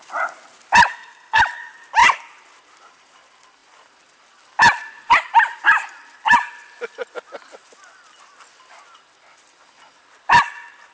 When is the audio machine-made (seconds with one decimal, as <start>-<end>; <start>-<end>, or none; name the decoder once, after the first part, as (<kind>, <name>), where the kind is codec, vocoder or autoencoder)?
0.9-1.4 (codec, SNAC)